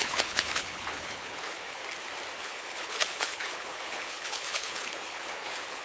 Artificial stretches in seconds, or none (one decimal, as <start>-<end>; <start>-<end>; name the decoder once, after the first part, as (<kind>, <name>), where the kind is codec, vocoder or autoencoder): 0.0-1.8 (codec, HILCodec); 2.4-5.8